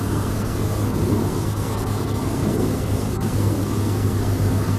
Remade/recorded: remade